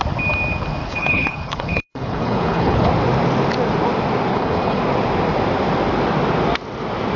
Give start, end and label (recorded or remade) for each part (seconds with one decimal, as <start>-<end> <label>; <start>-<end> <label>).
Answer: 0.0-0.8 recorded; 0.8-2.9 remade; 2.9-4.3 recorded; 4.3-4.8 remade; 4.8-7.2 recorded